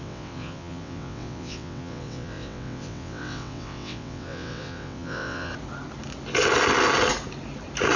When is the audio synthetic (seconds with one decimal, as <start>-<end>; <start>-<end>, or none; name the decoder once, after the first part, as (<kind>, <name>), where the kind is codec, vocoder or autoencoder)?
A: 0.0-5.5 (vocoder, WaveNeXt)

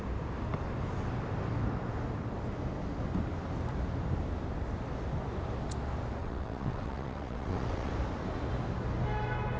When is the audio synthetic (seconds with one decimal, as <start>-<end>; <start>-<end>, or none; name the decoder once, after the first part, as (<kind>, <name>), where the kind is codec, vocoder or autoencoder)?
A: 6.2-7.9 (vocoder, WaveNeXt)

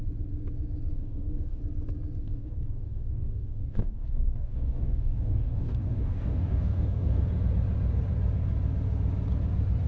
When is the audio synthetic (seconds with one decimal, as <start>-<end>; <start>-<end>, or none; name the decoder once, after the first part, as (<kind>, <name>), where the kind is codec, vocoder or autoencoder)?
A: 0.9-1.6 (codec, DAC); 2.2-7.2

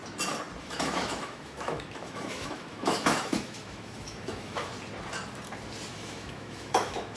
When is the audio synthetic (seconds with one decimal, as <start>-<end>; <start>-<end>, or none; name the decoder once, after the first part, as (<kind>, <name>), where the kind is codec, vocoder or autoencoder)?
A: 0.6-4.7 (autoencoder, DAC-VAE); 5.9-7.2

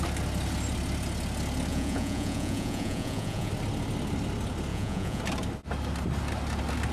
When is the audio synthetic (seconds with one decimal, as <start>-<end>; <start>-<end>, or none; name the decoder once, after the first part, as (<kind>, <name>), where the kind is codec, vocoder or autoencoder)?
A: 1.7-3.5 (vocoder, Vocos); 4.7-5.2